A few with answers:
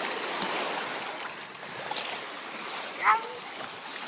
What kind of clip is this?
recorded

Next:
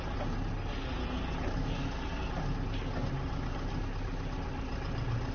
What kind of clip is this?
recorded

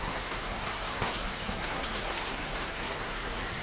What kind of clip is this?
remade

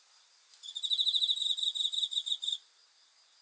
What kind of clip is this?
recorded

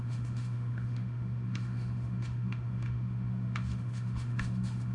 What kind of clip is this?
remade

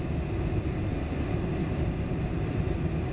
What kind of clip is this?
recorded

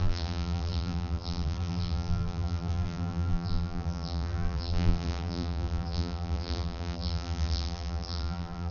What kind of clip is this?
remade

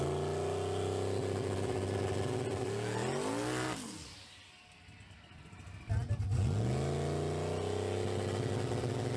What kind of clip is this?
recorded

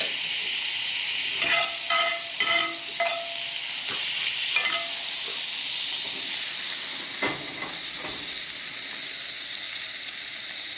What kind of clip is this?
recorded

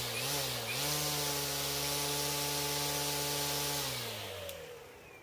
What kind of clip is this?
recorded